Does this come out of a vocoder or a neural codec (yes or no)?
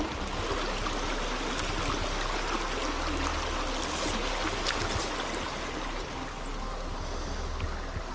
no